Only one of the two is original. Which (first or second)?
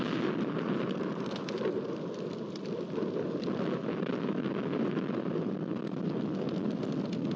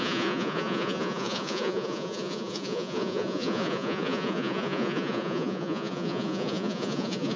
first